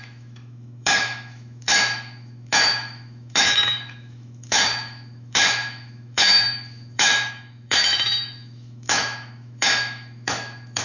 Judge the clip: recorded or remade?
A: remade